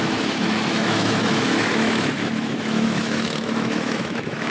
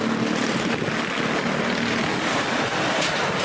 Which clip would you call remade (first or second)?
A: first